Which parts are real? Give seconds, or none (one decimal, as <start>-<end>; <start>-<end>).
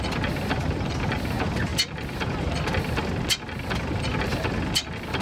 0.0-5.2